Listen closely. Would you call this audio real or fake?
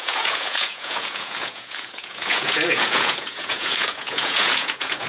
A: fake